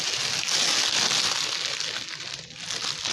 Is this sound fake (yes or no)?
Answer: no